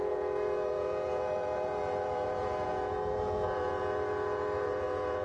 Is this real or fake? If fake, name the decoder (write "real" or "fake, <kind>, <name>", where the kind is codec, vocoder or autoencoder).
fake, vocoder, Vocos